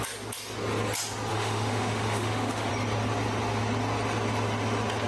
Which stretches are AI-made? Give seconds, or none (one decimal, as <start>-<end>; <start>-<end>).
1.3-2.7